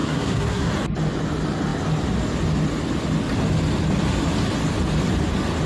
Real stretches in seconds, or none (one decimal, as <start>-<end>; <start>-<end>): 0.7-5.7